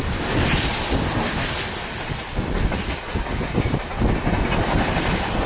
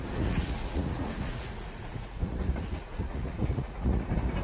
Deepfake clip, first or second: second